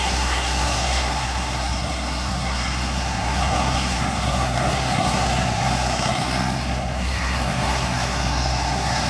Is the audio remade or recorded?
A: remade